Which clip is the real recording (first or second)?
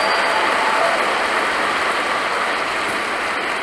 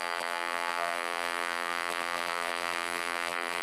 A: first